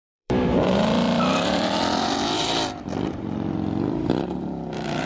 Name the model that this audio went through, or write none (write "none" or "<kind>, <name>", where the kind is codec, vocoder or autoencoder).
vocoder, BigVGAN v2